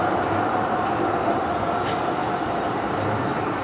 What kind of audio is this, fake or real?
real